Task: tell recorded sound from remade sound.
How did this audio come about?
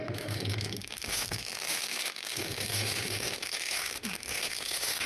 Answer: remade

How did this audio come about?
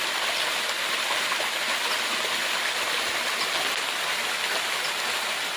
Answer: recorded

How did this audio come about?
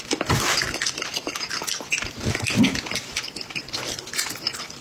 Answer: recorded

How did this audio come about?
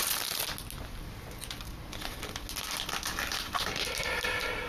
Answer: recorded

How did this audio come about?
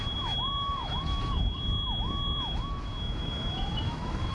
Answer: remade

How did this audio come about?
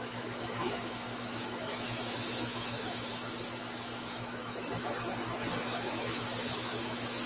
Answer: remade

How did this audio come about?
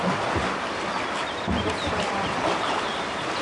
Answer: recorded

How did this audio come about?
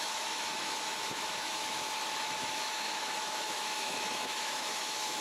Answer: remade